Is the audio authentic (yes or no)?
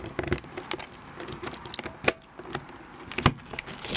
yes